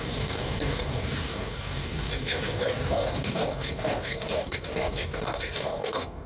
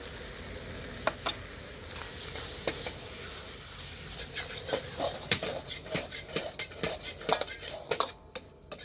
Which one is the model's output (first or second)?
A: first